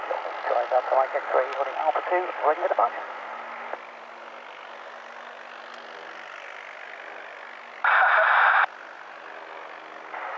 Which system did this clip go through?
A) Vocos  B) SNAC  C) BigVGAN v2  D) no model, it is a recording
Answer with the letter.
D